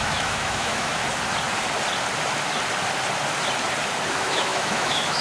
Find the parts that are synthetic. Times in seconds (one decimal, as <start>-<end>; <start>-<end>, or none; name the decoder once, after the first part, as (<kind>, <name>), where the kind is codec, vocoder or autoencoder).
0.0-1.0 (autoencoder, DAC-VAE); 4.1-5.2